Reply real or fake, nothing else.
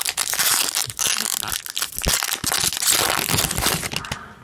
real